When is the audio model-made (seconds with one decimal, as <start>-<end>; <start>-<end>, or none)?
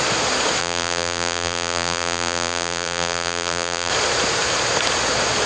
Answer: 0.6-3.9